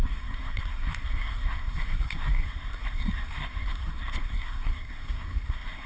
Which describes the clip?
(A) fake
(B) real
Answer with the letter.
A